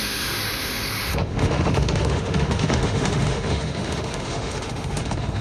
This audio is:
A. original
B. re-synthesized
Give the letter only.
B